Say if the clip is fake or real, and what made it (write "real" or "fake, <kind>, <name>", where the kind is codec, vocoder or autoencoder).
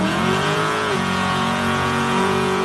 fake, vocoder, Vocos